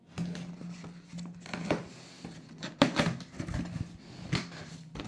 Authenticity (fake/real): real